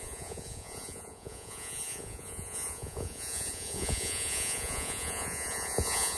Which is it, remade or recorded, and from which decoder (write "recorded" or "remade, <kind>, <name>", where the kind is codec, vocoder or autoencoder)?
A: remade, vocoder, Vocos